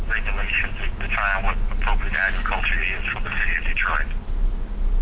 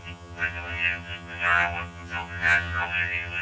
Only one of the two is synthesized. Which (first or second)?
second